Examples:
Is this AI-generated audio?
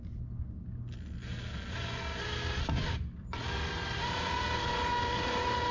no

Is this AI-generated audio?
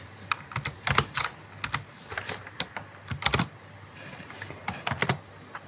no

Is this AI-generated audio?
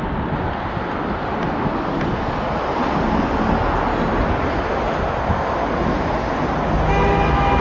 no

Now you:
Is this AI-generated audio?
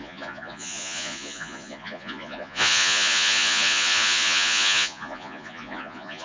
yes